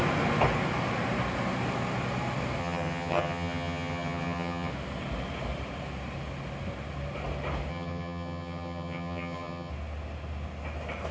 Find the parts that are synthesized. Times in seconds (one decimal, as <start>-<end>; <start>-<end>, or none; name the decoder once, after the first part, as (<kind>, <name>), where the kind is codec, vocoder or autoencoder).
2.6-4.7 (vocoder, HiFi-GAN); 7.7-9.7